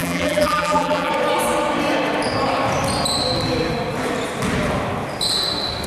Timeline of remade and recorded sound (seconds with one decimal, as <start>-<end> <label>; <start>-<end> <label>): 0.0-1.1 remade; 1.1-5.9 recorded